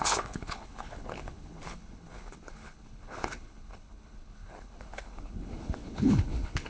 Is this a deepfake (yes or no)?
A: yes